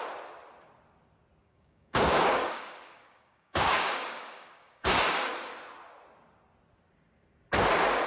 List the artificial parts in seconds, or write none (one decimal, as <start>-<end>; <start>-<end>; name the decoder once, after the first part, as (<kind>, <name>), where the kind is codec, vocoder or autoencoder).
1.4-5.3 (codec, DAC)

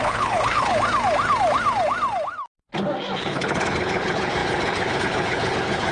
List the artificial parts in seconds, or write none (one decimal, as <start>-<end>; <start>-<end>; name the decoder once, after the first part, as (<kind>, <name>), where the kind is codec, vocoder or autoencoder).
0.0-0.7 (codec, HILCodec); 3.2-5.9